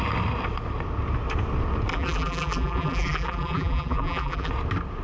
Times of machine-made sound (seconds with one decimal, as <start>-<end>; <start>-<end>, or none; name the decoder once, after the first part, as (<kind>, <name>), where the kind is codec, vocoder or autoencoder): 1.9-4.5 (vocoder, BigVGAN v2)